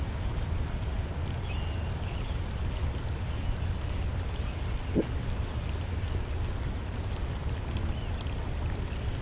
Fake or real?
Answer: real